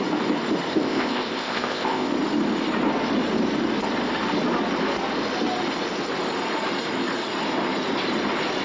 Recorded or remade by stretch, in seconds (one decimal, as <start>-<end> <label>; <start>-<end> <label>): 0.0-0.7 recorded; 0.7-2.1 remade; 2.1-8.6 recorded